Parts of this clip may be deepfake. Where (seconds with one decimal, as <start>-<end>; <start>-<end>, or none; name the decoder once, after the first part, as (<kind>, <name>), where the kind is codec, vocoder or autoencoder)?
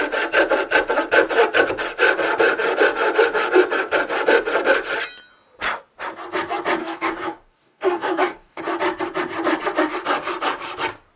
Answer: 6.8-8.6 (codec, DAC)